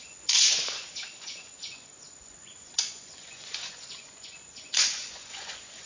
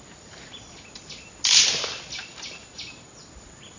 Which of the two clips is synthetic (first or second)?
first